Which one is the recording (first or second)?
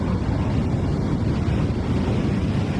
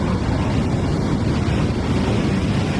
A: second